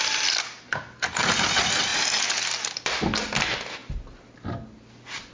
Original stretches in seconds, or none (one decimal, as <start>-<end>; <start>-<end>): 0.0-5.3